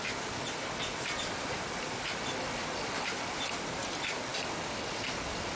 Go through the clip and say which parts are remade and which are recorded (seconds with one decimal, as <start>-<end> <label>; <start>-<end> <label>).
0.0-5.6 recorded